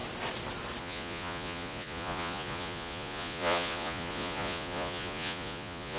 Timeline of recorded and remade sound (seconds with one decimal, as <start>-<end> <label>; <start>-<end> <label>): 0.0-0.8 recorded; 0.8-6.0 remade